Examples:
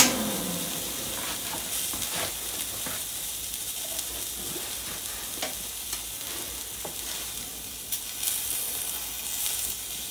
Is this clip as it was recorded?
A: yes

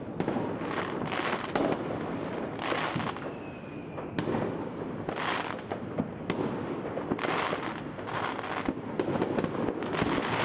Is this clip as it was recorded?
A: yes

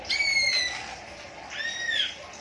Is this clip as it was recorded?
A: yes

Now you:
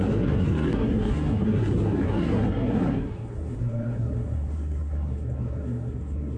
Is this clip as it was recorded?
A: no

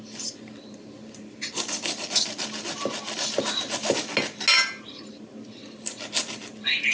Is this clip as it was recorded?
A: yes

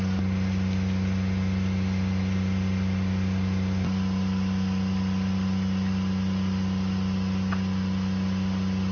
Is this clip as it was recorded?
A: yes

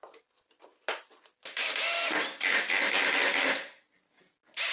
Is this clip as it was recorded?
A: yes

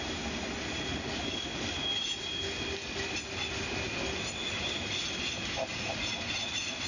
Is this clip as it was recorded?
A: yes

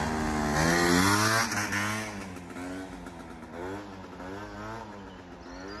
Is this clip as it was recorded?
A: yes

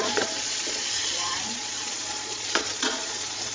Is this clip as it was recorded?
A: no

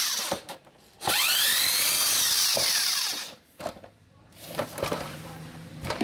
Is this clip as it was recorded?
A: no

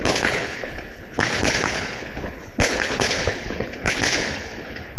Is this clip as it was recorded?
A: no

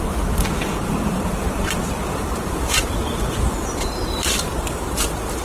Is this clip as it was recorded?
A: no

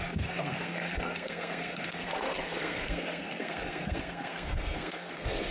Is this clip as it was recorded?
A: no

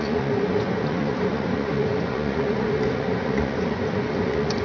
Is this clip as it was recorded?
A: no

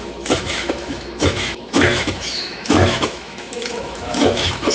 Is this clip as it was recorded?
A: no